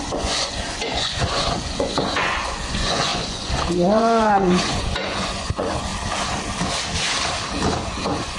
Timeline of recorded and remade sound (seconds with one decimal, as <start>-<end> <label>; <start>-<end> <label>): 0.0-5.9 remade; 5.9-7.7 recorded; 7.7-8.4 remade